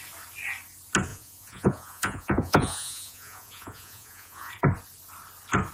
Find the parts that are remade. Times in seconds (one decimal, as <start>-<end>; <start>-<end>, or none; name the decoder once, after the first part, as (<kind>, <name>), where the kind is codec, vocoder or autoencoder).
1.1-4.5 (vocoder, Vocos)